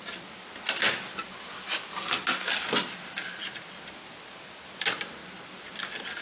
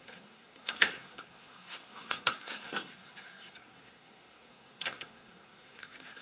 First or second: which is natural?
first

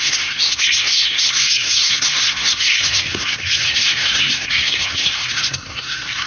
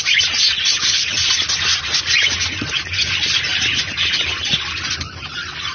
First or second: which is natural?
second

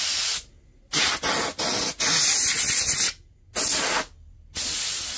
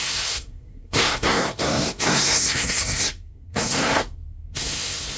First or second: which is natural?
first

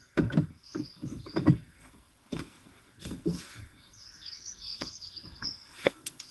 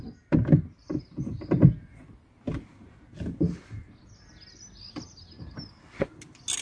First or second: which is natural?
second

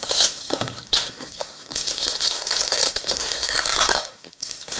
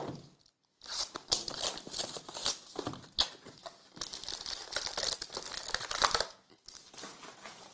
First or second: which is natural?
second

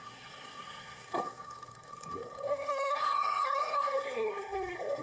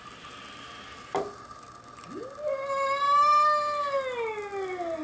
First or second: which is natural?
second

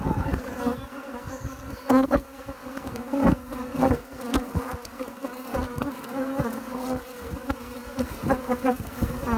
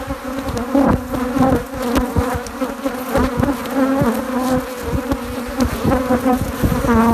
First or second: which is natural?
second